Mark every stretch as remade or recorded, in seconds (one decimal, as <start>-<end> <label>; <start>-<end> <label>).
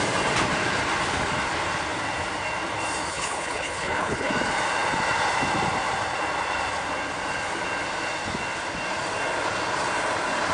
0.0-3.1 recorded; 3.1-4.3 remade; 4.3-10.5 recorded